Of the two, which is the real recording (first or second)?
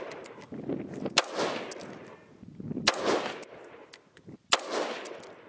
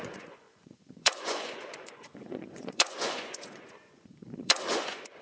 first